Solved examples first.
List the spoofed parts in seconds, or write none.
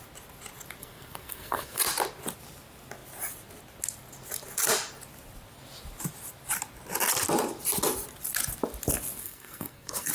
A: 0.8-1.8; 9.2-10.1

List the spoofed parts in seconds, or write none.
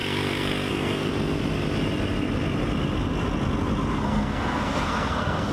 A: 0.0-1.1; 3.9-5.5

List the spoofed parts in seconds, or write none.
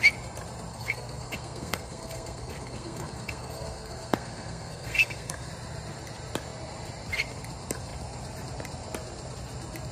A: 0.7-5.5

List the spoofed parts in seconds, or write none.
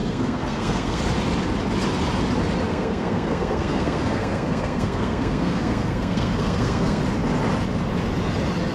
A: 0.0-1.0; 2.7-7.0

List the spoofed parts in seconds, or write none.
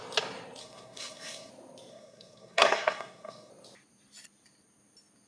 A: 0.6-1.5; 1.9-3.5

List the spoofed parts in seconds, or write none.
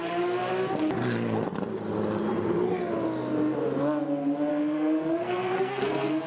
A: 4.5-6.3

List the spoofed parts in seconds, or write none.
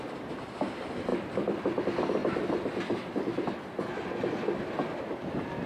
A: none